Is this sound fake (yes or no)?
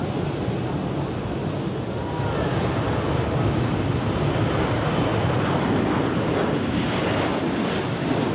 no